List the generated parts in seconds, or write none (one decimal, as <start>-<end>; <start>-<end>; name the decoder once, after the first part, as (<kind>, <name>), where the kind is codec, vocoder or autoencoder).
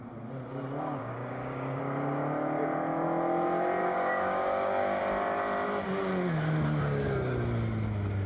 1.0-1.8 (codec, DAC); 3.8-5.0